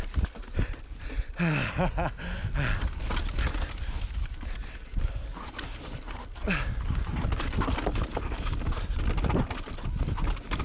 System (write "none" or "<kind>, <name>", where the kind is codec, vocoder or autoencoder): none